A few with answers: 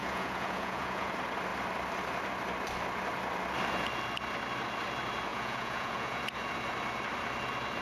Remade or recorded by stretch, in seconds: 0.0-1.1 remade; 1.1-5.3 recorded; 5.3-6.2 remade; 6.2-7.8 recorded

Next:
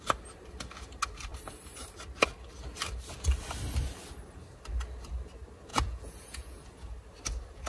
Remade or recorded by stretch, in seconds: 0.0-5.7 recorded; 5.7-6.7 remade; 6.7-7.7 recorded

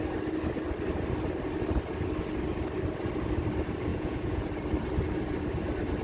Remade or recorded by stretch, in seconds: 0.0-3.9 recorded; 3.9-4.4 remade; 4.4-6.0 recorded

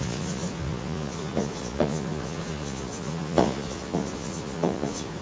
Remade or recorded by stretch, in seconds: 0.0-5.2 remade

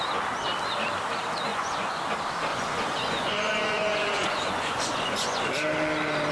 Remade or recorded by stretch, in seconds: 0.0-1.5 recorded; 1.5-2.0 remade; 2.0-2.5 recorded; 2.5-5.5 remade; 5.5-6.3 recorded

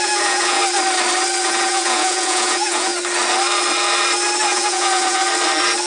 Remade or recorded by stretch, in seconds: 0.0-0.6 remade; 0.6-1.4 recorded; 1.4-2.9 remade; 2.9-4.4 recorded; 4.4-5.2 remade; 5.2-5.9 recorded

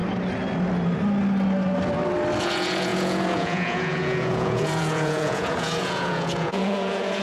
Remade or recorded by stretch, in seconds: 0.0-2.4 recorded; 2.4-7.2 remade

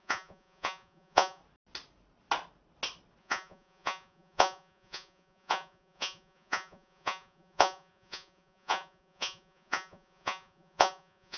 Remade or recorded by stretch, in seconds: 0.0-1.4 remade; 1.4-3.2 recorded; 3.2-11.4 remade